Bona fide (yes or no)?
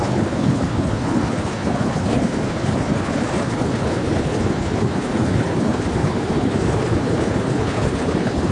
no